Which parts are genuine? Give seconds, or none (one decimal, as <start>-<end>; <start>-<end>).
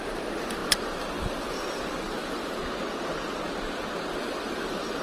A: 2.6-4.1